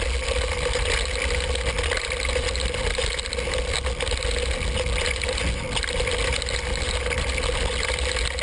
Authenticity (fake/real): real